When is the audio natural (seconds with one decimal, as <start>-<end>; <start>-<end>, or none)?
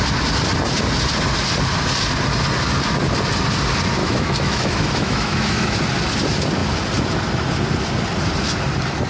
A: 0.0-4.0; 5.8-9.1